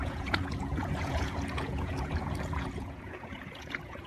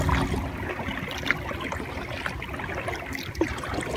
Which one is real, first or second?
second